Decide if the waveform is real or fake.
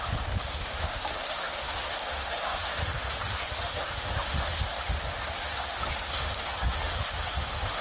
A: fake